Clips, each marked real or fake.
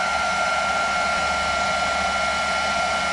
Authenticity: real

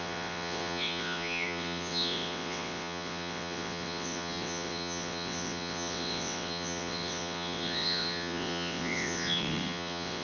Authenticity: fake